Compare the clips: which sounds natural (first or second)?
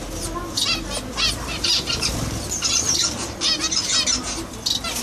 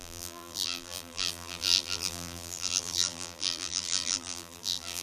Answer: first